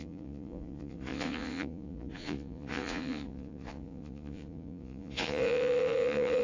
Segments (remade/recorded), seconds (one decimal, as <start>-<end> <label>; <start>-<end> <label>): 0.0-6.4 remade